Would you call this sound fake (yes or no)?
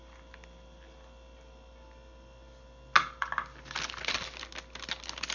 no